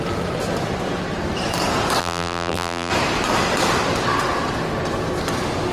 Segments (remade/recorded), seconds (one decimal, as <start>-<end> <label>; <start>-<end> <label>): 0.0-2.0 recorded; 2.0-2.9 remade; 2.9-5.7 recorded